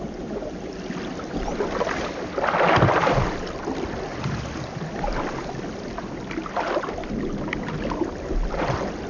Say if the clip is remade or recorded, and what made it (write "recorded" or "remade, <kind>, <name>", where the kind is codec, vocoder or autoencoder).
recorded